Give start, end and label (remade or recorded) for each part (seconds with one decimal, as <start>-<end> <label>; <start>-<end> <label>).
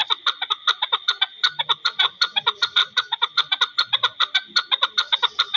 0.0-5.6 recorded